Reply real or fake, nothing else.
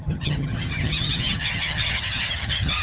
fake